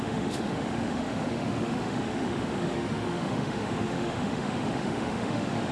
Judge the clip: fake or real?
fake